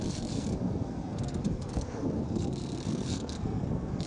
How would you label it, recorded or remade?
remade